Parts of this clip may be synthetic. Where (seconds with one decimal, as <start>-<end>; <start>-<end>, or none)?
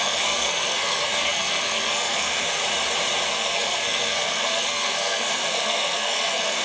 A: 0.0-2.6; 3.3-6.6